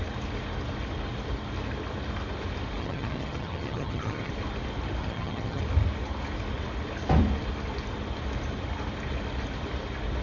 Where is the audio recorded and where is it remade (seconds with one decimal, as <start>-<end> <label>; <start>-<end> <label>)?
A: 0.0-2.8 recorded; 2.8-4.3 remade; 4.3-5.0 recorded; 5.0-5.6 remade; 5.6-10.2 recorded

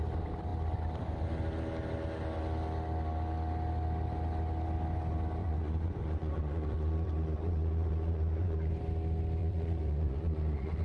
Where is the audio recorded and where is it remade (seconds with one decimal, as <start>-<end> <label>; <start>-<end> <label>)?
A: 0.0-5.4 recorded; 5.4-8.7 remade; 8.7-9.4 recorded; 9.4-10.8 remade

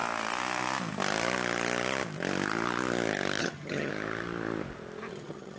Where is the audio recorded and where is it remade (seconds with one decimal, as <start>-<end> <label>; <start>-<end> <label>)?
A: 0.0-3.4 recorded; 3.4-3.9 remade; 3.9-5.1 recorded; 5.1-5.6 remade